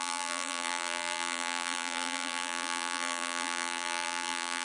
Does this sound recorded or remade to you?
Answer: remade